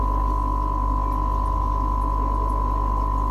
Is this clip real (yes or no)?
yes